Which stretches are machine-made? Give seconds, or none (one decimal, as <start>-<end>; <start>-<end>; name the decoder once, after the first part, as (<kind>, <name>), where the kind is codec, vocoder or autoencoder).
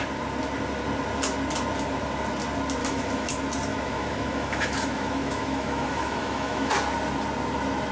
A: 2.8-3.3 (autoencoder, DAC-VAE); 3.7-6.7